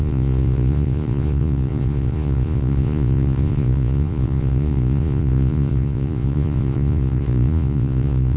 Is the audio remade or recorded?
remade